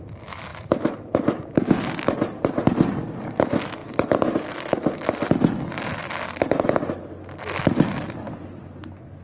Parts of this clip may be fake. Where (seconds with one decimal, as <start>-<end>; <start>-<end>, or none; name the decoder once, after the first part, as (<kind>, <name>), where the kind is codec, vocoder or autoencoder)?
0.5-1.4 (vocoder, BigVGAN v2); 3.8-5.7

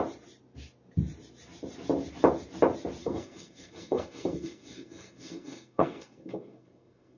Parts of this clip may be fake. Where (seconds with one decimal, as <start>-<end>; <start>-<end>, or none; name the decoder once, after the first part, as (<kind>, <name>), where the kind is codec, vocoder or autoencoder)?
3.0-7.2 (codec, SNAC)

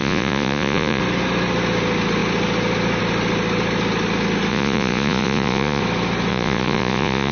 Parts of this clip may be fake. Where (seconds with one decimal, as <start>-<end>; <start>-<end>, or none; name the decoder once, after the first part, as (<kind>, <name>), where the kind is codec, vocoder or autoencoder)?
0.0-1.0 (vocoder, Vocos); 4.5-5.8; 6.3-7.3